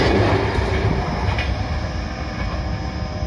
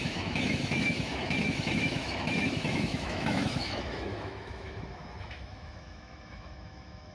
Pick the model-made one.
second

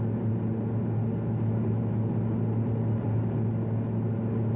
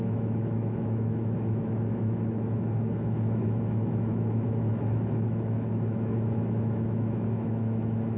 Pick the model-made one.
second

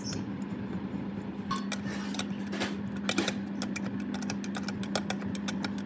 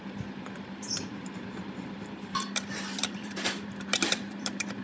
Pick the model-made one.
second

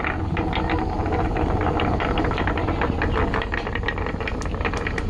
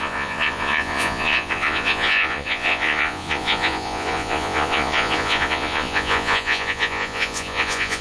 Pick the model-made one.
second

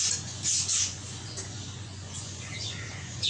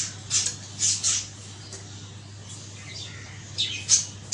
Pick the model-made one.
first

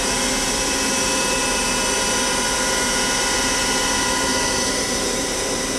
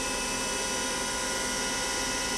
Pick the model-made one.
first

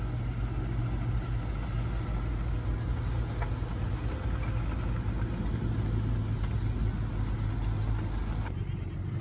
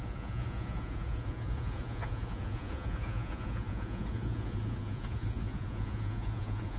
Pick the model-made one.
second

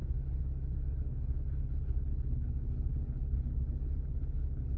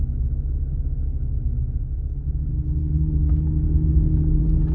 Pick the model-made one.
first